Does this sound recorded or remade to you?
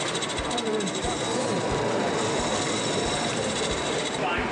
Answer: remade